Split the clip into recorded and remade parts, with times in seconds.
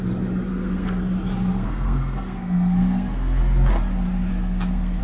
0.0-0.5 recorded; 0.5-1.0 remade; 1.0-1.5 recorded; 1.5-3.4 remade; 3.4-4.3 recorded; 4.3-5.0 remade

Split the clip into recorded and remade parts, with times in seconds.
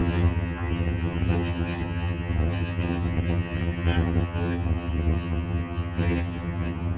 0.0-7.0 remade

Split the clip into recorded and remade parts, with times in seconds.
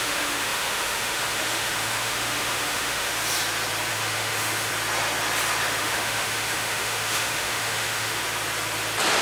0.0-3.1 remade; 3.1-3.9 recorded; 3.9-4.7 remade; 4.7-5.8 recorded; 5.8-8.2 remade; 8.2-9.2 recorded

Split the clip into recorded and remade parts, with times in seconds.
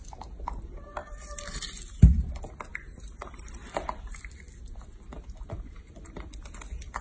0.0-1.0 recorded; 1.0-2.0 remade; 2.0-2.7 recorded; 2.7-7.0 remade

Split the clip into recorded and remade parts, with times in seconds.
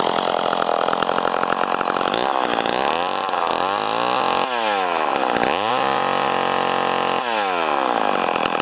0.0-8.6 recorded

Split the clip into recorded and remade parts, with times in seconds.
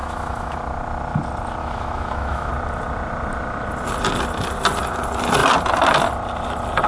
0.0-0.6 remade; 0.6-1.6 recorded; 1.6-2.5 remade; 2.5-6.9 recorded